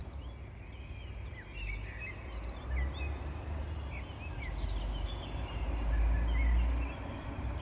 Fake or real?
real